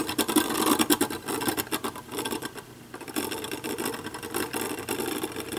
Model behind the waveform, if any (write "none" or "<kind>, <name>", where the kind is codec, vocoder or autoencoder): none